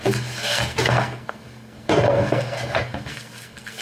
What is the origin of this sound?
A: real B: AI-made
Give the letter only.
B